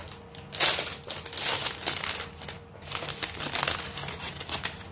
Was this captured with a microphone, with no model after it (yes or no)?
yes